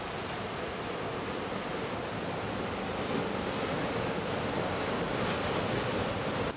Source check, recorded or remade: recorded